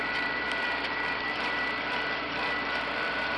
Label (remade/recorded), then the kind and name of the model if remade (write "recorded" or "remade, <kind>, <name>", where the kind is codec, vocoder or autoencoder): remade, vocoder, BigVGAN v2